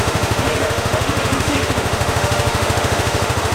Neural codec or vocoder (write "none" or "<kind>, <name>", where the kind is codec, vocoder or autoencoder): autoencoder, DAC-VAE